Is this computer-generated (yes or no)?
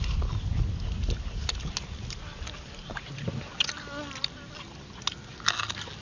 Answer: no